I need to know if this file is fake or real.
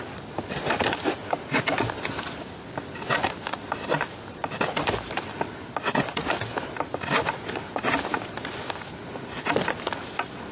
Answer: real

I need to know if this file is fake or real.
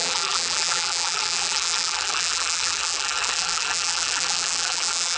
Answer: fake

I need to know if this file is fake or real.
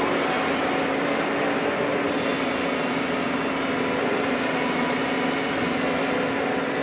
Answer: real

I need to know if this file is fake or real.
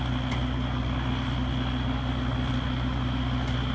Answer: real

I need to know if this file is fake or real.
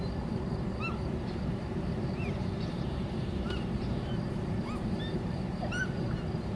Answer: fake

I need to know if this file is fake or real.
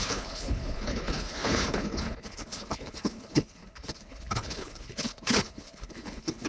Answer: fake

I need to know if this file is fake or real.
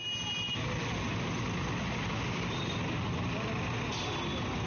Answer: real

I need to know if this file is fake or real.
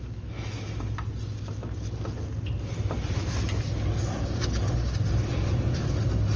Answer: real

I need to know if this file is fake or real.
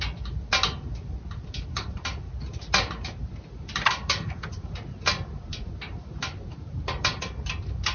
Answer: real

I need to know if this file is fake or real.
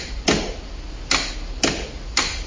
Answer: real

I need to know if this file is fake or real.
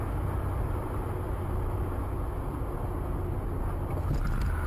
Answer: real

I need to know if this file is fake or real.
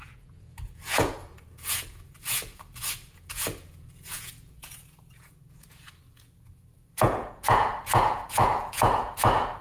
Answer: fake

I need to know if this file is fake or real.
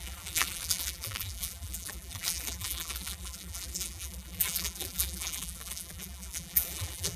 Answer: fake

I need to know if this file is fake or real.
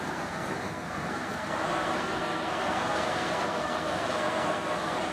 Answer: fake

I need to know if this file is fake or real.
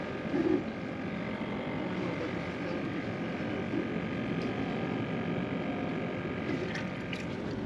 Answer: real